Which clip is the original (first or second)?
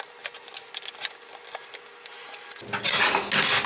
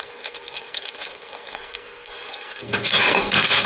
first